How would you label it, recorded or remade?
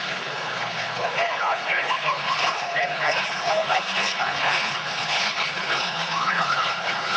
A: remade